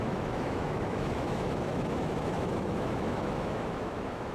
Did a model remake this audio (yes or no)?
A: yes